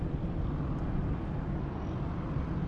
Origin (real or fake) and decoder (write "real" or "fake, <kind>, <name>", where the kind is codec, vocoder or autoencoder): real